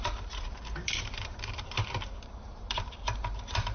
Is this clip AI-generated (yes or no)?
yes